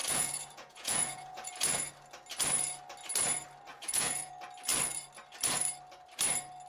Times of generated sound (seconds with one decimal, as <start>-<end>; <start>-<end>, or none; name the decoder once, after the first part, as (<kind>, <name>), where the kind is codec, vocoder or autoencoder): 0.0-1.5 (vocoder, Vocos); 3.7-4.3

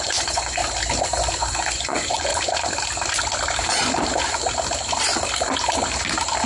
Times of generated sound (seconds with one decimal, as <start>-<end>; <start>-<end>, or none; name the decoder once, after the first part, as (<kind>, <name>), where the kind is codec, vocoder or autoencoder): 0.0-0.6 (vocoder, Vocos); 1.4-2.3

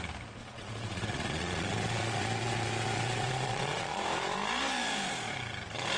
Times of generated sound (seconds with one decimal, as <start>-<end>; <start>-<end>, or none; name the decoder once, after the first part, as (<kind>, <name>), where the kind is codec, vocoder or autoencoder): 0.4-4.0 (vocoder, Vocos)

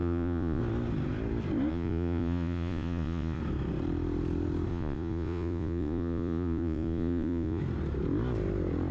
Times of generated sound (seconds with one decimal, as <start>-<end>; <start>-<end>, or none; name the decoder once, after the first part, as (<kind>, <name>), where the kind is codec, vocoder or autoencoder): 0.0-0.6 (vocoder, Vocos); 1.7-3.4; 4.7-7.6

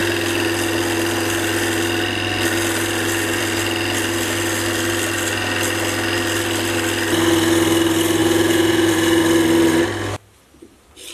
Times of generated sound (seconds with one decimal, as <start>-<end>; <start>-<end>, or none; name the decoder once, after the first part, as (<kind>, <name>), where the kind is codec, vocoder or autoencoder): 8.2-9.2 (vocoder, Vocos)